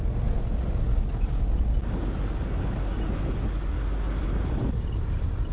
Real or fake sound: real